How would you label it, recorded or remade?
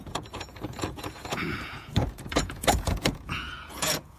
remade